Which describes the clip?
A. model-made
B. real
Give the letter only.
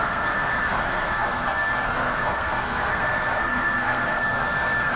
A